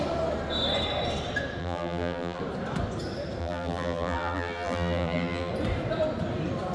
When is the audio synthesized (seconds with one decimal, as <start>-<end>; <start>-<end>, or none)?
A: 1.6-2.4; 3.4-5.5